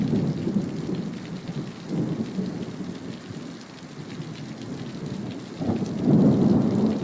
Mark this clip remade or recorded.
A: recorded